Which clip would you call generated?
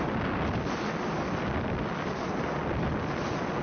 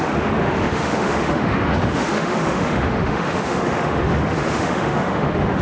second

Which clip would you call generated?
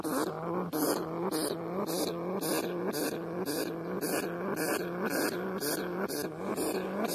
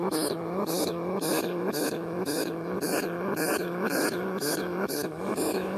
second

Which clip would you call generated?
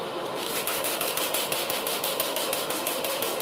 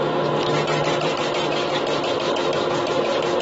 first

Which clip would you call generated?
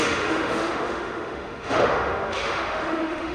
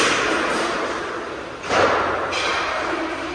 first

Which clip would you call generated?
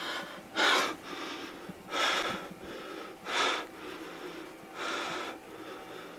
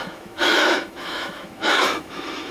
second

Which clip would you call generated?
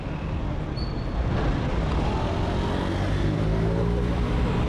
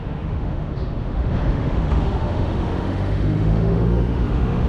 second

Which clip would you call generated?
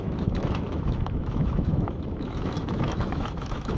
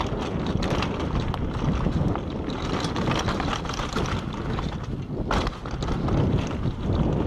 first